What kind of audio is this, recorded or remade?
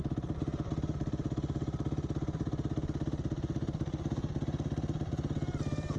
recorded